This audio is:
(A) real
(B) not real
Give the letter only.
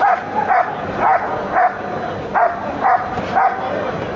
A